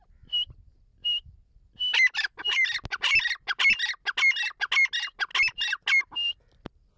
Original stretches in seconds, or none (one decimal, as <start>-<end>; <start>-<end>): 0.0-7.0